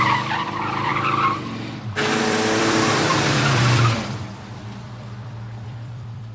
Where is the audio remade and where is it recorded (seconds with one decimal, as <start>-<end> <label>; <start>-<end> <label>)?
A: 0.0-0.9 remade; 0.9-2.2 recorded; 2.2-6.3 remade